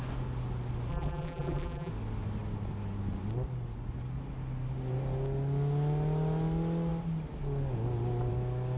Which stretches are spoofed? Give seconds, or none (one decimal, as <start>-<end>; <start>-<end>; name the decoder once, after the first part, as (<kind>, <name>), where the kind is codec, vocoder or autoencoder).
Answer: 0.9-1.9 (vocoder, BigVGAN v2)